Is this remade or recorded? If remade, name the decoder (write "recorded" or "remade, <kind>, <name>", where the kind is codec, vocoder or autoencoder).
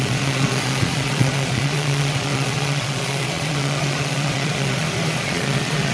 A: remade, vocoder, Vocos